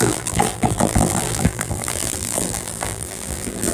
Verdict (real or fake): fake